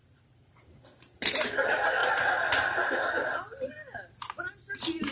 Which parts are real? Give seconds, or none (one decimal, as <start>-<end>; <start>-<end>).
1.5-5.1